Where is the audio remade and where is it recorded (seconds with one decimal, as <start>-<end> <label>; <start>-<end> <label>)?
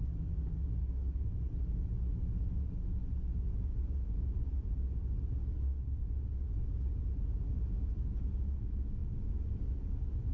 0.0-0.8 recorded; 0.8-1.5 remade; 1.5-10.3 recorded